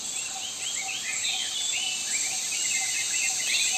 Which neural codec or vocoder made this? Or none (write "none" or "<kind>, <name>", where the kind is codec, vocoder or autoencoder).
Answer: none